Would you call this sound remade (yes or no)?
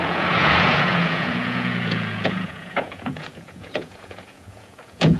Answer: yes